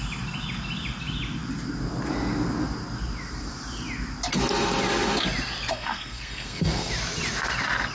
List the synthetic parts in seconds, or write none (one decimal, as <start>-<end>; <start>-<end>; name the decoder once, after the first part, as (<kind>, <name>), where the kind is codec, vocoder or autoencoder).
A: 5.7-6.9 (codec, SNAC)